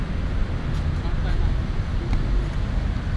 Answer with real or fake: real